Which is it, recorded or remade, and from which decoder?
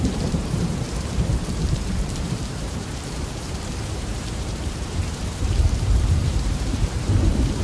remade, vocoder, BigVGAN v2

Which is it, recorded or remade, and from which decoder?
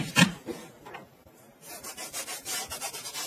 remade, vocoder, BigVGAN v2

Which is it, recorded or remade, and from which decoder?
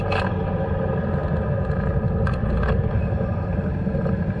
recorded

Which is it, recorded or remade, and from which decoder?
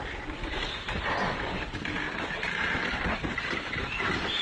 recorded